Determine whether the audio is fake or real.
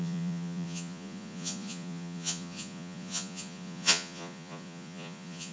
fake